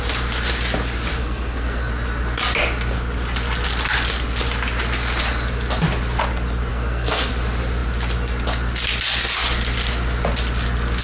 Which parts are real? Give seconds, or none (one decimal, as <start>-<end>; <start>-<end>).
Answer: 0.0-1.2; 1.9-6.7; 7.3-11.0